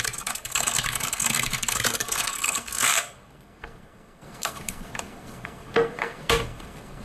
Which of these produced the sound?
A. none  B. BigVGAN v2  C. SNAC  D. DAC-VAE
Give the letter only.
C